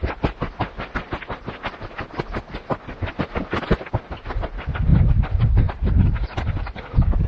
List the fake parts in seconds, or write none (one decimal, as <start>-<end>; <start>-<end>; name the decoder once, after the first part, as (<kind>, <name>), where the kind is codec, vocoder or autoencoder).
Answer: none